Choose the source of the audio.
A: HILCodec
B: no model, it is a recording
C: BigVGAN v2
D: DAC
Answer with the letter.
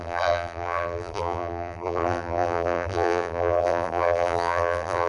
C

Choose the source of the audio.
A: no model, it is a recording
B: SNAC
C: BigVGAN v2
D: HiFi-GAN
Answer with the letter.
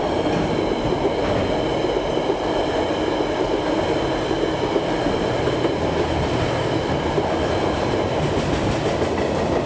A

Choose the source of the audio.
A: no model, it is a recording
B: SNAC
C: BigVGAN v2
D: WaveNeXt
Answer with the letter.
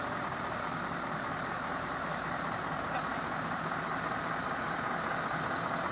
C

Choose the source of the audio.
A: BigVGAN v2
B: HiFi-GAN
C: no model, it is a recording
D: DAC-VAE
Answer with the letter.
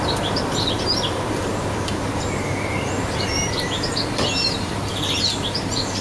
A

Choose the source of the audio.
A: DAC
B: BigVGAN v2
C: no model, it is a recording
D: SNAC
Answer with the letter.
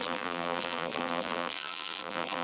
B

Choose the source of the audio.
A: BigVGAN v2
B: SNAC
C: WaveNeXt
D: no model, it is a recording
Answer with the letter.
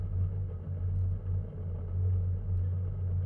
D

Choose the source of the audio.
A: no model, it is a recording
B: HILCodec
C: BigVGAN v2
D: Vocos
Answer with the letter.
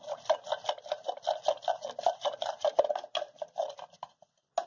A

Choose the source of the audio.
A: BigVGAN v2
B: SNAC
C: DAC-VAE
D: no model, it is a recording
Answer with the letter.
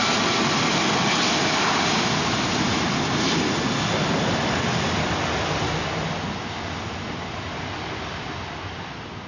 D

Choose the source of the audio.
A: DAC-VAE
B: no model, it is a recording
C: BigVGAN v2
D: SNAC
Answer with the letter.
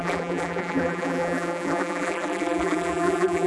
C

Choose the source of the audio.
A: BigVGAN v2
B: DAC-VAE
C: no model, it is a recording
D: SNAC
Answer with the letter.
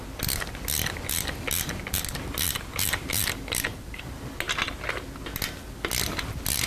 C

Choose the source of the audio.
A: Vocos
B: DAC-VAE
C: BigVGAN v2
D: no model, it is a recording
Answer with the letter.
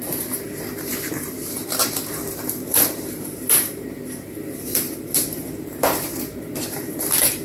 C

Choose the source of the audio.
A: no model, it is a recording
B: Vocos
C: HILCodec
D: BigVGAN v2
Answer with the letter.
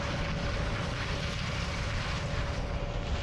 A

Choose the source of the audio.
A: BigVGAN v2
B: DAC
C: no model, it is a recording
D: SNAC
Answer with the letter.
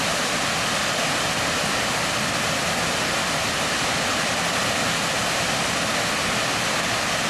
C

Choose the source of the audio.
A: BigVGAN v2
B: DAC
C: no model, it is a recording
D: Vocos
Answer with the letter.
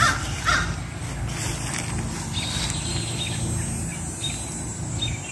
C